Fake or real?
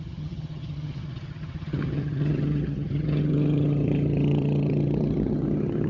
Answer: fake